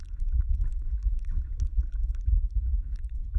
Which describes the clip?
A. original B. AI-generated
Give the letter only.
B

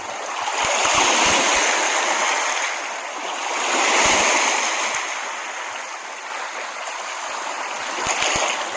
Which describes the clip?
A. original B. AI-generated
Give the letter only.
A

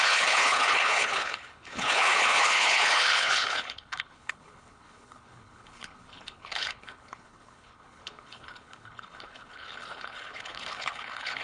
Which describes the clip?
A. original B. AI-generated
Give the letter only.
B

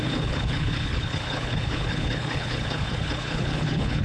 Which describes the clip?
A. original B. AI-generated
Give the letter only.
B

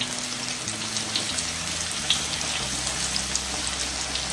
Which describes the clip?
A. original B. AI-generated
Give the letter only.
A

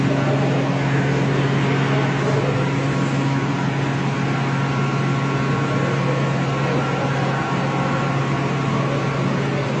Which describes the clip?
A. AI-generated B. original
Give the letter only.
B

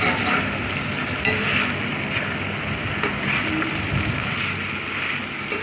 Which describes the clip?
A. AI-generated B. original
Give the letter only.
B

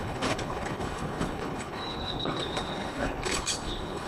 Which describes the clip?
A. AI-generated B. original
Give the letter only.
A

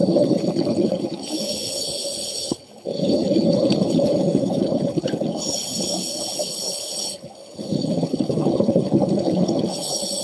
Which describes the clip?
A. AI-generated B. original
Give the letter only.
A